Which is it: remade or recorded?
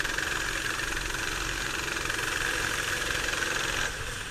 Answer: recorded